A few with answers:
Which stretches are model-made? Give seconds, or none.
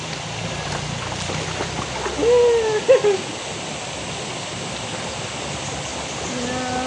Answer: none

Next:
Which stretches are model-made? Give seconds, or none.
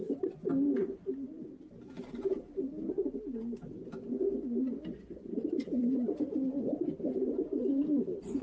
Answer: none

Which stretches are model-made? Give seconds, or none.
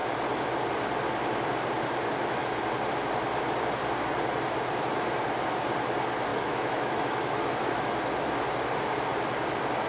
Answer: 6.3-7.5 (autoencoder, DAC-VAE)